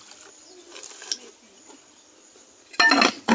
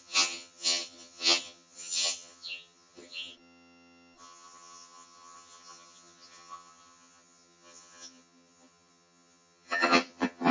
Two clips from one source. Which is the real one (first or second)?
first